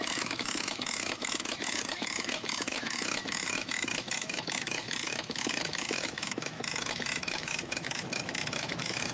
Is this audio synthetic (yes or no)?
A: yes